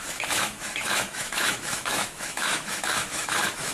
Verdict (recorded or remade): remade